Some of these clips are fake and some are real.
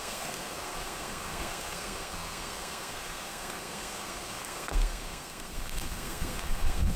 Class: fake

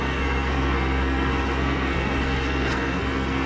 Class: fake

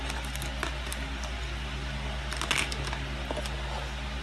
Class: real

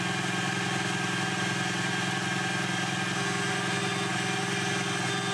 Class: real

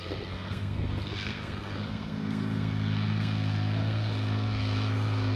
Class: fake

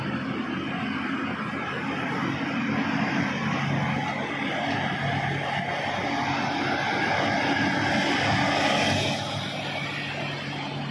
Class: real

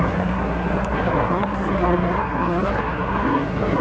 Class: fake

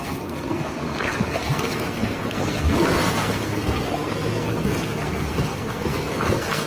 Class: fake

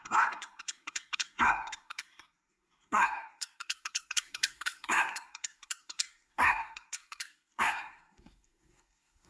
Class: fake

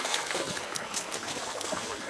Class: fake